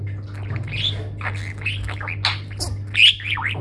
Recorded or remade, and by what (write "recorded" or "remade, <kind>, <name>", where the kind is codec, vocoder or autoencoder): recorded